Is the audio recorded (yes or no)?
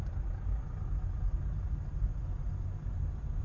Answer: yes